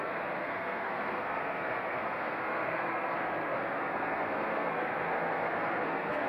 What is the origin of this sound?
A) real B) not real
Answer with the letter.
B